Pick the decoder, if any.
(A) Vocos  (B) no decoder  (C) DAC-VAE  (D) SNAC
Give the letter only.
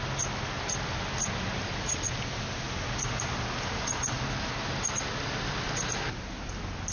B